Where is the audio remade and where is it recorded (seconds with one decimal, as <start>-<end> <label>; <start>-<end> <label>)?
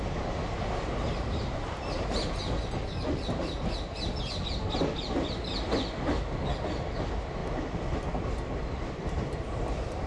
0.0-10.1 recorded